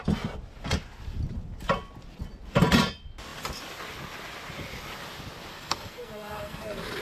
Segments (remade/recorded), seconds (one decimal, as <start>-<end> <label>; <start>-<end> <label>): 0.0-5.5 recorded; 5.5-7.0 remade